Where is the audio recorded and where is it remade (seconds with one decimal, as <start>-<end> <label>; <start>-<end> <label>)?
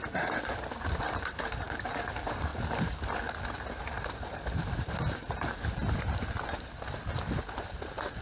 0.0-2.5 remade; 2.5-4.0 recorded; 4.0-8.2 remade